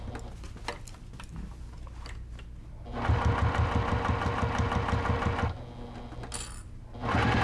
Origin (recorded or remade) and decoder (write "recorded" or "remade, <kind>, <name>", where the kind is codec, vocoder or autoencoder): recorded